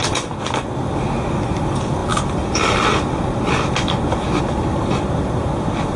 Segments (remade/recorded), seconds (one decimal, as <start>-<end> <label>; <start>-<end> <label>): 0.0-6.0 recorded